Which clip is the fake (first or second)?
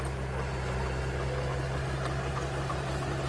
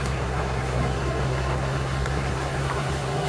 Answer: second